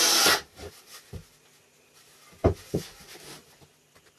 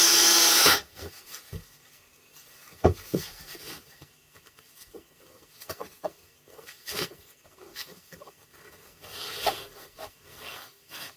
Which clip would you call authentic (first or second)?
first